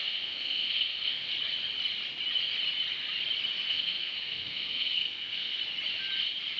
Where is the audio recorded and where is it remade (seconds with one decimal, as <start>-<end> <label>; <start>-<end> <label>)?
0.0-1.3 remade; 1.3-3.7 recorded; 3.7-5.6 remade; 5.6-6.6 recorded